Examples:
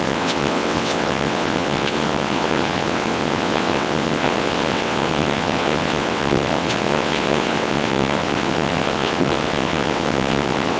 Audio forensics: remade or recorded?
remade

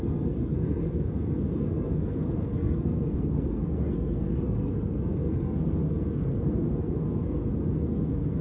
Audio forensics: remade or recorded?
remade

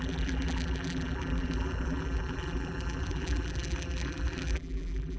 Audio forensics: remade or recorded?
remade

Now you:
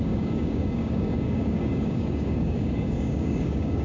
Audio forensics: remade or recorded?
remade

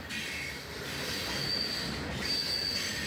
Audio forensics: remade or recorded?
recorded